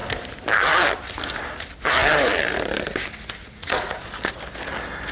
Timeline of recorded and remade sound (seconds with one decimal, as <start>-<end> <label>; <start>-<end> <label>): 0.0-3.4 recorded; 3.4-4.0 remade; 4.0-5.1 recorded

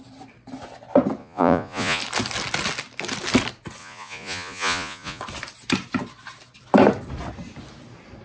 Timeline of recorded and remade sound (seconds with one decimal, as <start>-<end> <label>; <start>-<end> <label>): 0.0-1.2 recorded; 1.2-2.0 remade; 2.0-3.8 recorded; 3.8-5.2 remade; 5.2-8.2 recorded

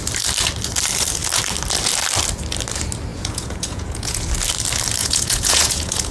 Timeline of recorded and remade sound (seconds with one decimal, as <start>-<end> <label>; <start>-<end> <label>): 0.0-3.1 recorded; 3.1-4.3 remade; 4.3-5.0 recorded; 5.0-6.1 remade

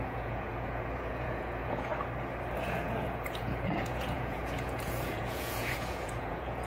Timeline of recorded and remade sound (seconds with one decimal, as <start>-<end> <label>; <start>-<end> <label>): 0.0-1.9 remade; 1.9-2.6 recorded; 2.6-6.7 remade